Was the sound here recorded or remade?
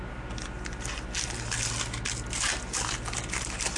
recorded